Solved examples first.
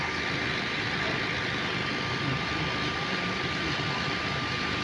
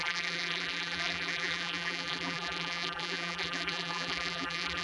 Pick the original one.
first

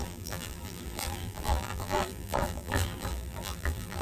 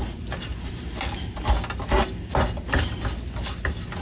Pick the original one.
second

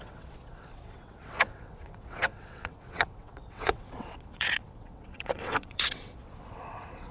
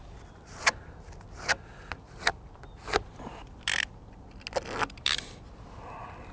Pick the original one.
second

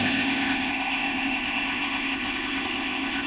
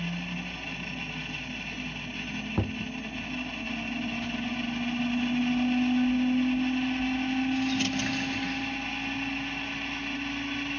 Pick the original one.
second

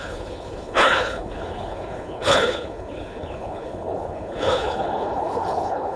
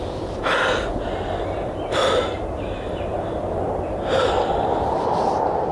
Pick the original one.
second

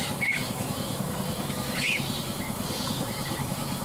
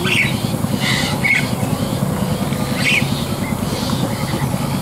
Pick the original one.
second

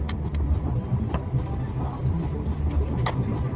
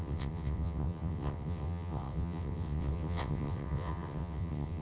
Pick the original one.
first